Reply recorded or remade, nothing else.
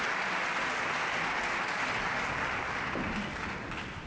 recorded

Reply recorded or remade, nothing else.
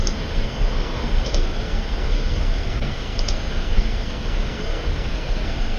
remade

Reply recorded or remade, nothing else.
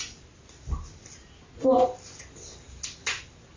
recorded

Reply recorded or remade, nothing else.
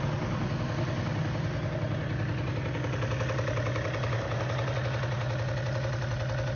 recorded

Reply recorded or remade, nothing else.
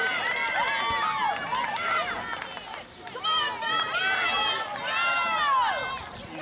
recorded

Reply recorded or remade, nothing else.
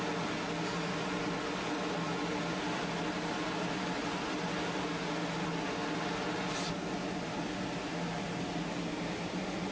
recorded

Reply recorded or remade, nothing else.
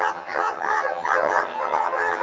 remade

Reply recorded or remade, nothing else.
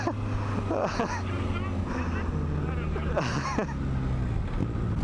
recorded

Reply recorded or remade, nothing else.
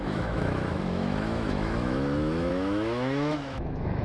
remade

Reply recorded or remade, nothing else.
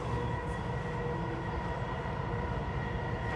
recorded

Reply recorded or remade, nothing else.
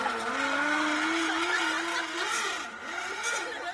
recorded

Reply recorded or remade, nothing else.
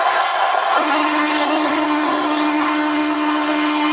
remade